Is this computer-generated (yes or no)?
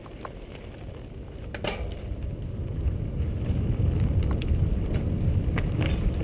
no